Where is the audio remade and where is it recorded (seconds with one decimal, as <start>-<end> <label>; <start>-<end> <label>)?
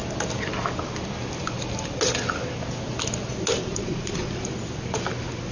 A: 0.0-3.7 recorded; 3.7-4.3 remade; 4.3-5.5 recorded